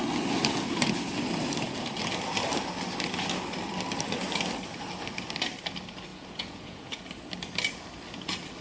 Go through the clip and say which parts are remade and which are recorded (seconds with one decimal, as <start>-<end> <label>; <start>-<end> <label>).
0.0-6.1 recorded; 6.1-7.0 remade; 7.0-8.6 recorded

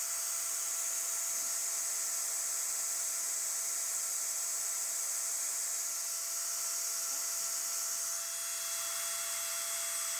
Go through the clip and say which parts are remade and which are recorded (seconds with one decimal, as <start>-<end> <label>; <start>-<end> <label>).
0.0-10.2 recorded

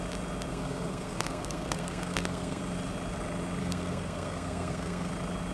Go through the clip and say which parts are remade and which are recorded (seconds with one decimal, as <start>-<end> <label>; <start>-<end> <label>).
0.0-0.5 recorded; 0.5-2.6 remade; 2.6-3.6 recorded; 3.6-5.1 remade; 5.1-5.5 recorded

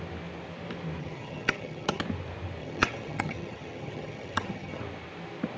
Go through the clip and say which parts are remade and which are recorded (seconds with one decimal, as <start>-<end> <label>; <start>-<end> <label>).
0.0-1.0 recorded; 1.0-2.0 remade; 2.0-2.6 recorded; 2.6-4.8 remade; 4.8-5.6 recorded

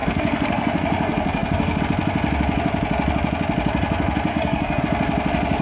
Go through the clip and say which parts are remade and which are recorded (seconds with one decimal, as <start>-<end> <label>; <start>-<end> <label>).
0.0-1.8 remade; 1.8-4.3 recorded; 4.3-4.8 remade; 4.8-5.6 recorded

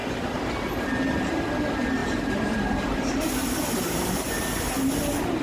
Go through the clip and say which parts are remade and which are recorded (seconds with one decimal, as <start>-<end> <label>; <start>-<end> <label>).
0.0-5.4 recorded

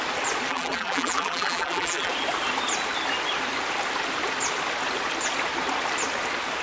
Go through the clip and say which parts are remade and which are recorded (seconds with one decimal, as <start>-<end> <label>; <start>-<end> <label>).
0.0-0.5 recorded; 0.5-2.1 remade; 2.1-6.6 recorded

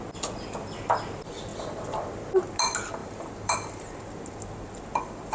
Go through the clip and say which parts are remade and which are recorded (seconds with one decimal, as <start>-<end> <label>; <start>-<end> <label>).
0.0-3.0 recorded; 3.0-3.7 remade; 3.7-5.3 recorded